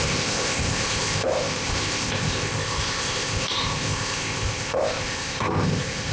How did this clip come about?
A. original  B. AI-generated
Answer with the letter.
B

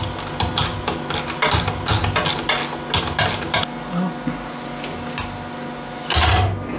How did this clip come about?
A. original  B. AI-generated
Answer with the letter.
A